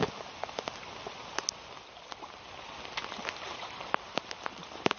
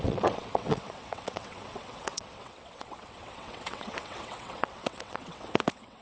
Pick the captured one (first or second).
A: first